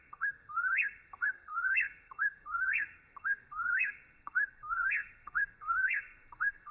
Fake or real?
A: fake